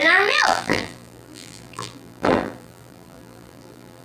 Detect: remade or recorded remade